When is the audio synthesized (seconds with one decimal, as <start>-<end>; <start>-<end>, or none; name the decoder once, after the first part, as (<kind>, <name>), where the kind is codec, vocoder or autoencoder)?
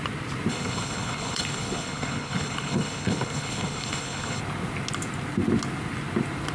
0.5-4.4 (codec, HILCodec)